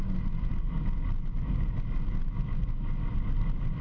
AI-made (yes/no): no